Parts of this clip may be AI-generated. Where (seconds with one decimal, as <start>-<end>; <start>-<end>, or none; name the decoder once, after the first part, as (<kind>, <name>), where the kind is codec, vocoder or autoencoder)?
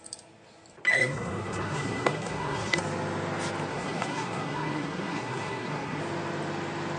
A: 0.9-2.8 (codec, SNAC); 3.7-6.0